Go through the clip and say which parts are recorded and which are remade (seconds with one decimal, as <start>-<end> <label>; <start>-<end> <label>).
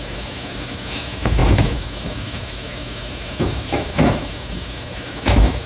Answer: 0.0-5.7 remade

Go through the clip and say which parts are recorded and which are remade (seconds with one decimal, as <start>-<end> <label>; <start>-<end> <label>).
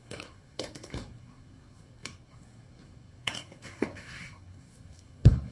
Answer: 0.0-5.5 remade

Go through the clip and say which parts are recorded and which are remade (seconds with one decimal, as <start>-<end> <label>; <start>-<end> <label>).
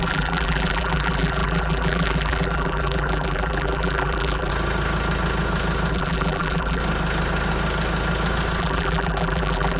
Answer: 0.0-4.5 remade; 4.5-5.9 recorded; 5.9-6.8 remade; 6.8-8.6 recorded; 8.6-9.8 remade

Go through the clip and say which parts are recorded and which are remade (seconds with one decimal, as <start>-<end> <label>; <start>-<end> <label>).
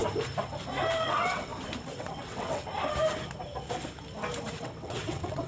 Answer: 0.0-0.9 recorded; 0.9-1.5 remade; 1.5-2.0 recorded; 2.0-2.7 remade; 2.7-4.6 recorded; 4.6-5.5 remade